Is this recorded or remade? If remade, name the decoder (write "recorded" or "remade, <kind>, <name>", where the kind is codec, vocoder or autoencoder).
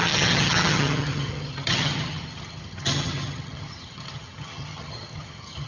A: remade, vocoder, HiFi-GAN